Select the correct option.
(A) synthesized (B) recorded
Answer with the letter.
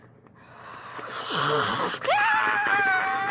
B